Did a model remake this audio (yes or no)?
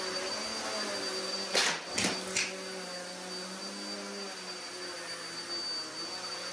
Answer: no